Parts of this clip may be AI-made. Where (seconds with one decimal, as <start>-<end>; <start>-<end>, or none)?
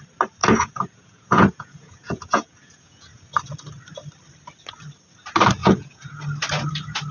0.4-3.2; 5.6-6.2